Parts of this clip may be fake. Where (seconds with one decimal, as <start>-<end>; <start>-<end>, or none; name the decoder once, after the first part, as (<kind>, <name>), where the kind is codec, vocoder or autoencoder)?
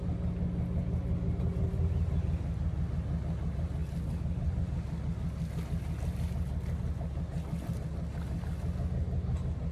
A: none